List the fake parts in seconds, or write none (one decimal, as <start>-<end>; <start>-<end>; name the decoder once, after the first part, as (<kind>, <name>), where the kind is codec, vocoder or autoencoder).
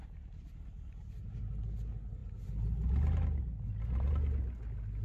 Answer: none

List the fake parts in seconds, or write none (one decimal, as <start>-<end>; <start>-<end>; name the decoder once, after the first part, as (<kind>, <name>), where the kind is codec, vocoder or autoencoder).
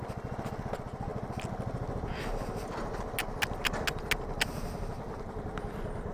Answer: none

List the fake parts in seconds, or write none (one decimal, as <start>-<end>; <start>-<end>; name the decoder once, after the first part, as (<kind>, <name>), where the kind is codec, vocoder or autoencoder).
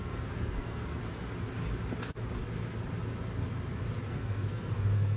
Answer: 0.0-1.0 (codec, SNAC); 4.1-5.2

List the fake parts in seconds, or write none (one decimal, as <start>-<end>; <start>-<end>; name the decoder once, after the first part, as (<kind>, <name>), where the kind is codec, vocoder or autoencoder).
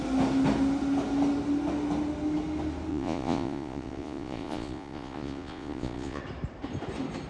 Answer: 2.9-6.2 (vocoder, Vocos)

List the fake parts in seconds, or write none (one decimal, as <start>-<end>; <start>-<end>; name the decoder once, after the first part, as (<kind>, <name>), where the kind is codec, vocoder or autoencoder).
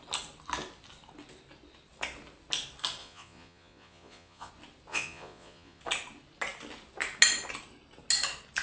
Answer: 3.0-4.5 (vocoder, Vocos); 4.9-5.8